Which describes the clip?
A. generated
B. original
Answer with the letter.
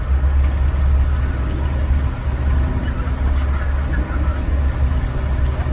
B